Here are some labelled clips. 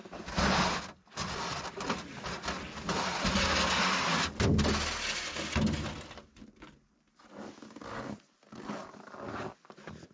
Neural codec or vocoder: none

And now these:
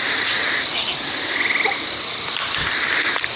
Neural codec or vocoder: none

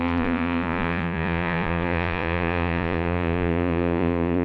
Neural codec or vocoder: vocoder, Vocos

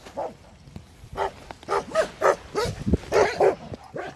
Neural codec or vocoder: none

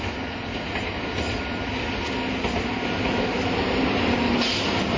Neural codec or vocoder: none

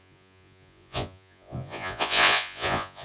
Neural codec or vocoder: vocoder, Vocos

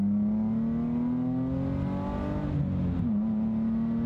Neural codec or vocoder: none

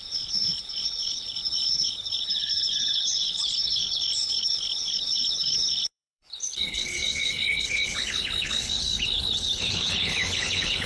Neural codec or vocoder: codec, HILCodec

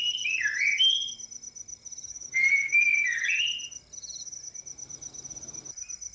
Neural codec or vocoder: none